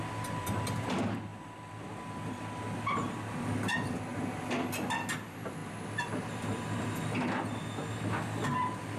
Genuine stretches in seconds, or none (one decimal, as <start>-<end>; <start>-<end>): 0.0-9.0